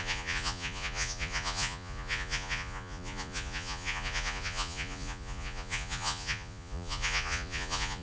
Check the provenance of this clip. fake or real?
fake